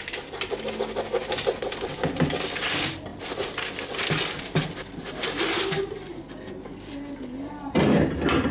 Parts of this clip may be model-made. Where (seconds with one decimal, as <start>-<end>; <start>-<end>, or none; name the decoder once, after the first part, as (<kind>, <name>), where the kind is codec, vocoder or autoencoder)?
none

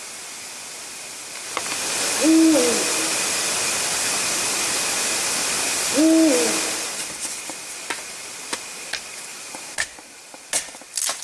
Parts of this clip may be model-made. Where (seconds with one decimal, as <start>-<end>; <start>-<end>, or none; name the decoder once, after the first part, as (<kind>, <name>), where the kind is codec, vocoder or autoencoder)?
none

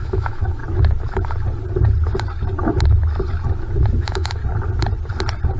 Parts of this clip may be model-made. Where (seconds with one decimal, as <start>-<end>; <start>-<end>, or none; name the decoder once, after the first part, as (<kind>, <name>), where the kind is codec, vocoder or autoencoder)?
0.0-0.6 (autoencoder, DAC-VAE); 4.0-4.4

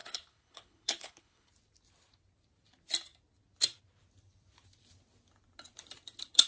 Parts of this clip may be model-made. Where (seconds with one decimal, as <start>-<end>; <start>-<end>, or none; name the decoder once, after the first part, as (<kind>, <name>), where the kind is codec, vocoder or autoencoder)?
0.0-1.5 (codec, HILCodec)

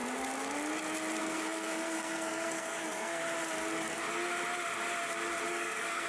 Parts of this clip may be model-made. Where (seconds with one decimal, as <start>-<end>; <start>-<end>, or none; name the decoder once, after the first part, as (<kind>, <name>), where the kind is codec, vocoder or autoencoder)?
1.2-3.2 (codec, SNAC); 5.5-6.1